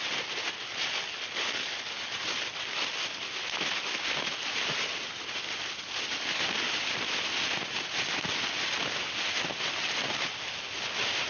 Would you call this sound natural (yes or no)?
yes